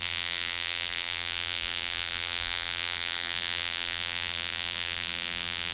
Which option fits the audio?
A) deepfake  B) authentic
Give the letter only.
A